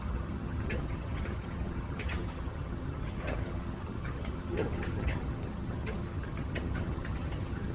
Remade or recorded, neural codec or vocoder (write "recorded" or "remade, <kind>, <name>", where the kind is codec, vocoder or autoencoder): remade, vocoder, HiFi-GAN